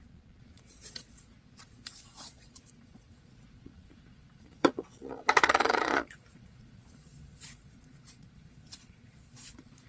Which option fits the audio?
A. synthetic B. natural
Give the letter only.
A